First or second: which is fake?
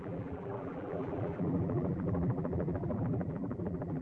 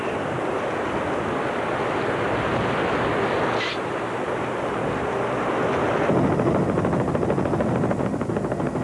first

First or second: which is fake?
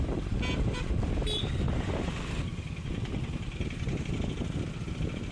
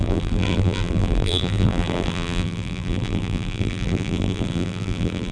second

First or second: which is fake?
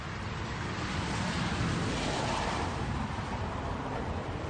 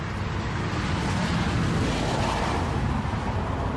first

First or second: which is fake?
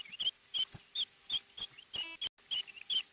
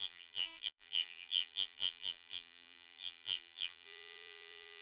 second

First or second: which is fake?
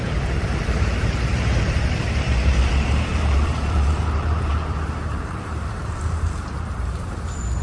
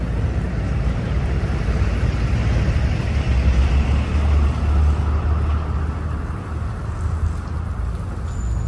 first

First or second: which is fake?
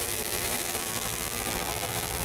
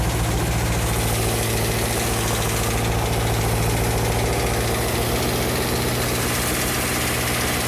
first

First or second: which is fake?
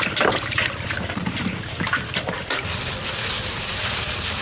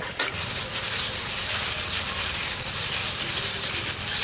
first